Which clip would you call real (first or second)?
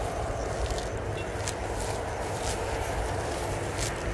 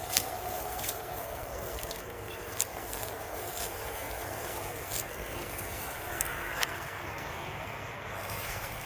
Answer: first